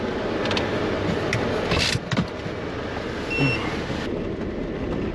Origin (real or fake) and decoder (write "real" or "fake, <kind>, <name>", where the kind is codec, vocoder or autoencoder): real